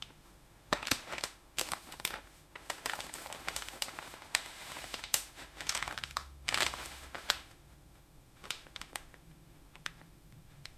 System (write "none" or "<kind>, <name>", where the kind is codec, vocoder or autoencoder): autoencoder, DAC-VAE